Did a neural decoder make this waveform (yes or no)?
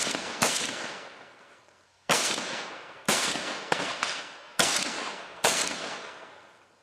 yes